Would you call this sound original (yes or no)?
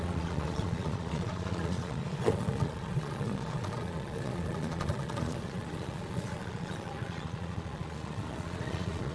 no